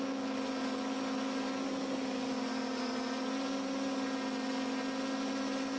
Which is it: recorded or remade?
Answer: recorded